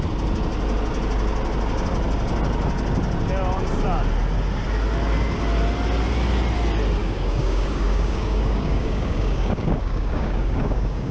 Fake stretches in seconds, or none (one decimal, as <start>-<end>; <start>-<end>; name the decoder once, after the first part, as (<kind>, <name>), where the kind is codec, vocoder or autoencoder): 7.0-11.1 (codec, DAC)